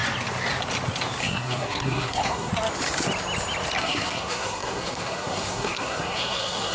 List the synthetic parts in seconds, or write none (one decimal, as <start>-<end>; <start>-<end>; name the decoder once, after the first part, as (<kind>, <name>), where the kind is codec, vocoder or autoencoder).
1.2-2.5 (codec, SNAC); 3.8-6.7